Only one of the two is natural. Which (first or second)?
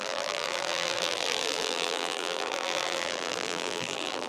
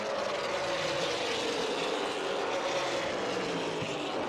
second